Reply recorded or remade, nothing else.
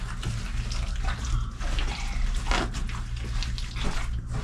recorded